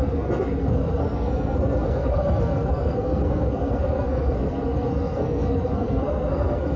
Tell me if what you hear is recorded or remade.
remade